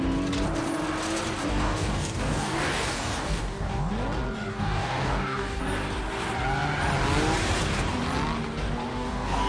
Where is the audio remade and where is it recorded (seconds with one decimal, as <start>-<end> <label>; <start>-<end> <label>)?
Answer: 0.0-1.5 recorded; 1.5-3.9 remade; 3.9-4.5 recorded; 4.5-5.6 remade; 5.6-8.9 recorded; 8.9-9.5 remade